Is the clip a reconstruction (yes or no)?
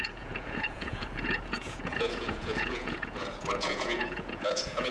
yes